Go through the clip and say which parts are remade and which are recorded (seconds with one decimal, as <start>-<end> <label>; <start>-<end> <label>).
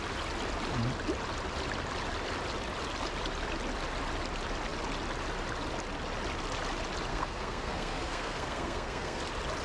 0.0-7.1 recorded; 7.1-9.2 remade; 9.2-9.6 recorded